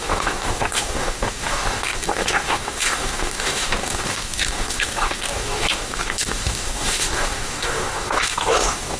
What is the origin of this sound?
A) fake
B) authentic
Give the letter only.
A